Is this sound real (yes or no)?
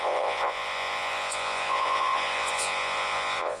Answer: no